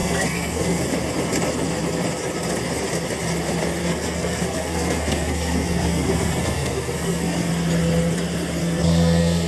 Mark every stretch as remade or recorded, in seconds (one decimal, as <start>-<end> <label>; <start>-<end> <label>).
0.0-0.8 remade; 0.8-3.8 recorded; 3.8-7.5 remade; 7.5-8.6 recorded; 8.6-9.5 remade